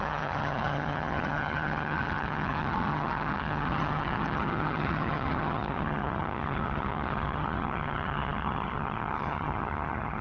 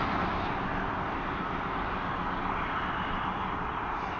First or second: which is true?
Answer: second